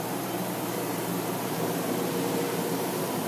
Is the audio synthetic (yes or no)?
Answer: yes